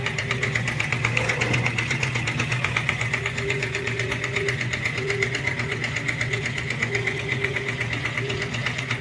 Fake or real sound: fake